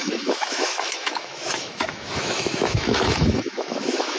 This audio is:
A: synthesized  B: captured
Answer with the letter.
A